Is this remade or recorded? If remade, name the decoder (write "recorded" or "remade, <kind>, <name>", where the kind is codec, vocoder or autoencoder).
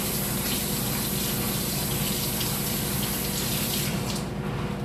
recorded